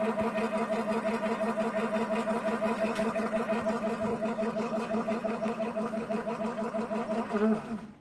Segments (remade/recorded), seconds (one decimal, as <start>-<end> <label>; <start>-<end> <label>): 0.0-2.8 recorded; 2.8-3.4 remade; 3.4-4.1 recorded; 4.1-6.3 remade; 6.3-8.0 recorded